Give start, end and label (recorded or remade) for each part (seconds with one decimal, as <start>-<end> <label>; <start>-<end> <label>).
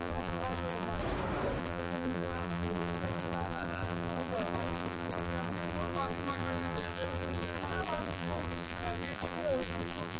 0.0-1.0 remade; 1.0-1.6 recorded; 1.6-10.2 remade